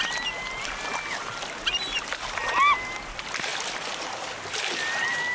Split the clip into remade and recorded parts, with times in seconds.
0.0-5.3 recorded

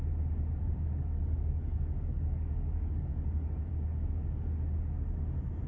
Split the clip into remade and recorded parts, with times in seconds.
0.0-0.6 recorded; 0.6-3.7 remade; 3.7-5.7 recorded